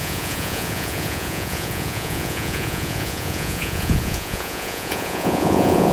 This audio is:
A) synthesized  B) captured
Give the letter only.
A